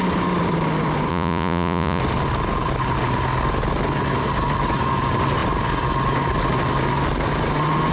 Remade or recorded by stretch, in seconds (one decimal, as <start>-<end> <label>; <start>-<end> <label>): 0.0-1.1 recorded; 1.1-2.0 remade; 2.0-7.9 recorded